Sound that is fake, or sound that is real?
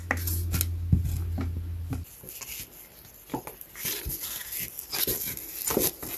real